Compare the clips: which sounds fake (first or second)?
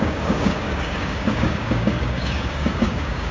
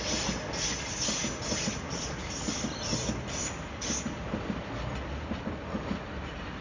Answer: first